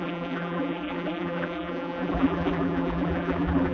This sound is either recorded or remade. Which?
remade